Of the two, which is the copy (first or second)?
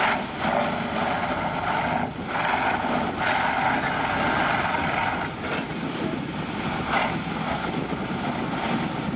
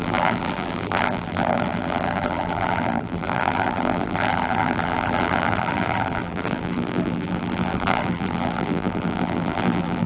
second